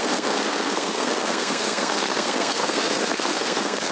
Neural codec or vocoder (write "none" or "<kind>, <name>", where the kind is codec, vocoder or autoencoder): codec, SNAC